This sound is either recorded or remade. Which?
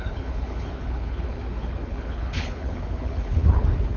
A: remade